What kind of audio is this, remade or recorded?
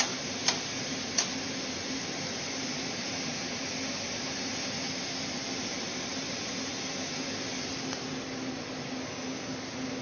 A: recorded